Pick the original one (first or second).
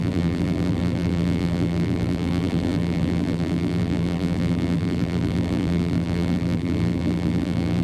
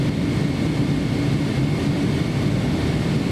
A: second